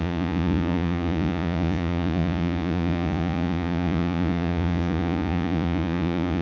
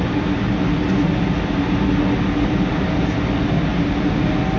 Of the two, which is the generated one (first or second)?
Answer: first